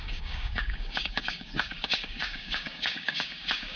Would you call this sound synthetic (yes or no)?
yes